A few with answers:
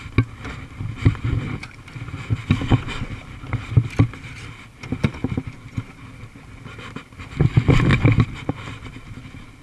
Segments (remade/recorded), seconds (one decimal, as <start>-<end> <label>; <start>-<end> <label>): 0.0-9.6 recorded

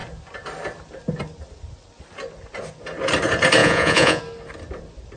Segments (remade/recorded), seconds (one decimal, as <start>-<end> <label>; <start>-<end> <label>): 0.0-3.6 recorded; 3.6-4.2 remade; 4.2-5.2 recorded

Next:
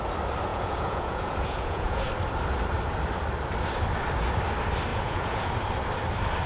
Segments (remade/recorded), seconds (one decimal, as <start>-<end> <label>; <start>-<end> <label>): 0.0-0.5 recorded; 0.5-2.1 remade; 2.1-4.9 recorded; 4.9-5.5 remade; 5.5-6.5 recorded